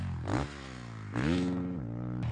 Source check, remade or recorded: recorded